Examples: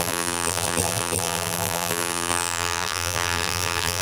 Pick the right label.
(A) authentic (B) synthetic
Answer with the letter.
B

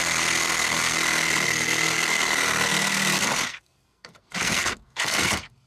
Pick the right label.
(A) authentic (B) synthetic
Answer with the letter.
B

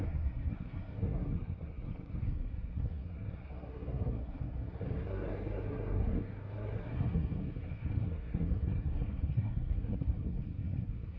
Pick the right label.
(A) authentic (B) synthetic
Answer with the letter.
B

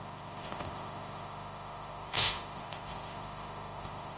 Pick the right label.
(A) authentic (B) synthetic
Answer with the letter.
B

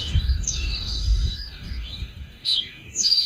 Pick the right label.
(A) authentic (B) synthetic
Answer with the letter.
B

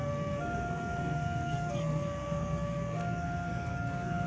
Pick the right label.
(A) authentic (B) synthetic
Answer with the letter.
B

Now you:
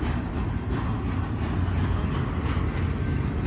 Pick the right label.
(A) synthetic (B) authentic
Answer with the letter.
B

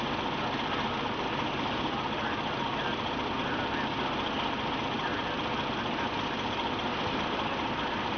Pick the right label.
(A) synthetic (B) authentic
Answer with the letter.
B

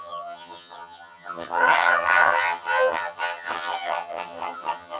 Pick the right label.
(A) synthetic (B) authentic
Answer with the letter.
A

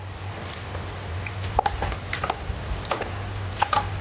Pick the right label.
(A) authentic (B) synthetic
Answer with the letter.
A